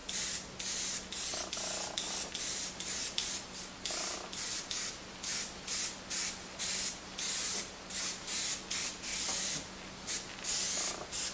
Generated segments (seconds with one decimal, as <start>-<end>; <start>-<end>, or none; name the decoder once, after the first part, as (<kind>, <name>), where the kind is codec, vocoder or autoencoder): none